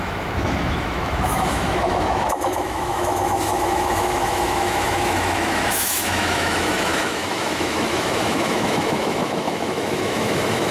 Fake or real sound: fake